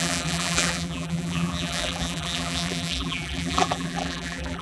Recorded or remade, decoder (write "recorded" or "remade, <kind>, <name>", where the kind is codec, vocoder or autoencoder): remade, vocoder, BigVGAN v2